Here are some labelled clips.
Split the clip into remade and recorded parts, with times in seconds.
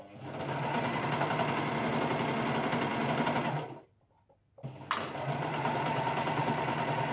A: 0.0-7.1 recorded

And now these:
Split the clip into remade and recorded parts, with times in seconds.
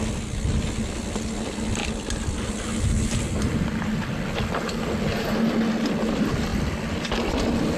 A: 0.0-7.8 recorded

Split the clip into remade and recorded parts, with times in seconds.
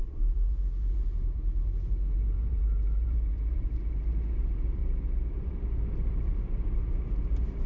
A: 0.0-4.8 remade; 4.8-5.3 recorded; 5.3-7.7 remade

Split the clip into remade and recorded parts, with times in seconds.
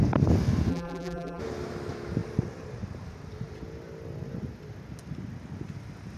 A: 0.0-0.7 recorded; 0.7-1.4 remade; 1.4-6.2 recorded